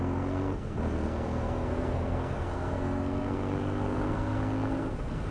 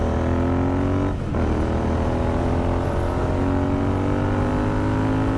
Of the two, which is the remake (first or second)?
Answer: first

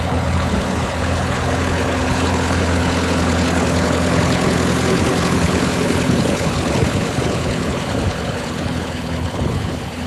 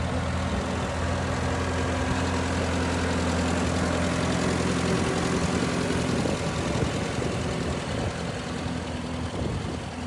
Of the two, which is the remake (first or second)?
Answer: first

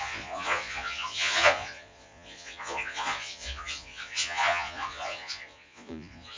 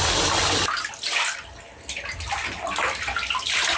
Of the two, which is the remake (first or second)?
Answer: first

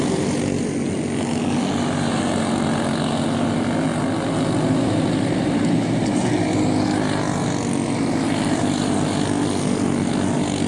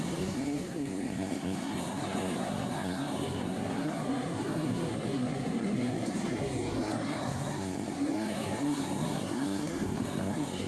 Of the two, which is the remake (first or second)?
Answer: second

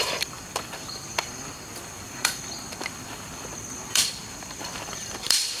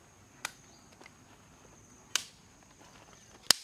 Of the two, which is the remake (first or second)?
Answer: first